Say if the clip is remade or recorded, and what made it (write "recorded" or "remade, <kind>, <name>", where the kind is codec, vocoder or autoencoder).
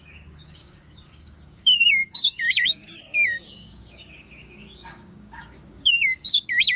remade, codec, DAC